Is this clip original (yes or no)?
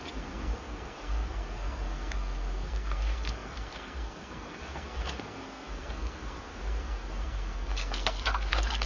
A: no